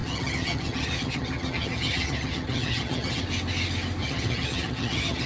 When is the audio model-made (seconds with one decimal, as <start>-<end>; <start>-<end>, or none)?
0.0-3.2; 4.0-5.3